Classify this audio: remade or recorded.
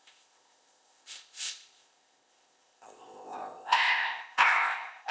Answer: remade